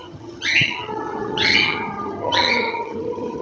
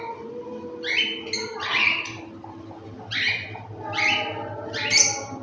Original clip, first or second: second